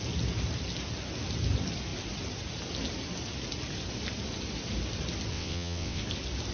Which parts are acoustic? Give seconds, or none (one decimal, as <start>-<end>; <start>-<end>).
0.0-5.3; 6.0-6.5

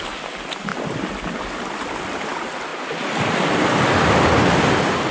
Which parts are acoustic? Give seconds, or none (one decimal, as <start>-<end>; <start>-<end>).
0.0-5.1